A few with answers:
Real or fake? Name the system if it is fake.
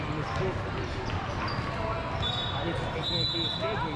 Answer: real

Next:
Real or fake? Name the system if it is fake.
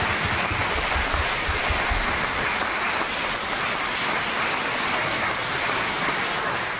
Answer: real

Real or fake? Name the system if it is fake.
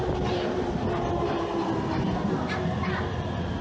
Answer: real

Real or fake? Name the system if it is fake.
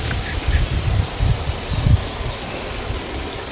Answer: real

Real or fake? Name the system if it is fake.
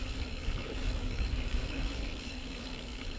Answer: fake, codec, DAC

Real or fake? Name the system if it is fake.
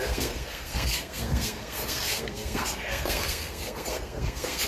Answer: fake, codec, SNAC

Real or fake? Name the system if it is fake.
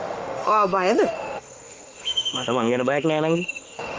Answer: fake, autoencoder, DAC-VAE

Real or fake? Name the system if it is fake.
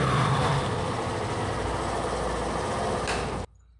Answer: real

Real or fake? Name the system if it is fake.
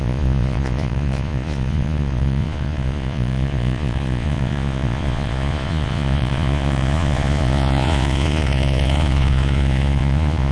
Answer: fake, vocoder, Vocos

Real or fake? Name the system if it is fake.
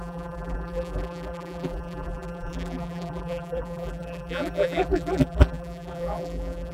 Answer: fake, vocoder, BigVGAN v2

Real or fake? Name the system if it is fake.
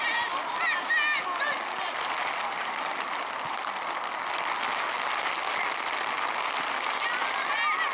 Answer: real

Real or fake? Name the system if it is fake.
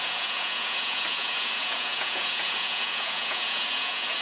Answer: fake, vocoder, Vocos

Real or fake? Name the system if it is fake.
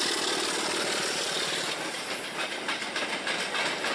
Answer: real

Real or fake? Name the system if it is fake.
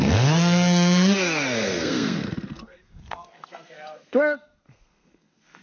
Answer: fake, codec, SNAC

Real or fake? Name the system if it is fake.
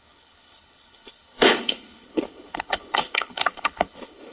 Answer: fake, codec, HILCodec